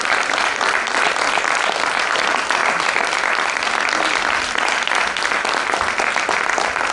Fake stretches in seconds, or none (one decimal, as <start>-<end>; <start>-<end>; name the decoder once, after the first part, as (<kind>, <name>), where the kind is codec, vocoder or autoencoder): none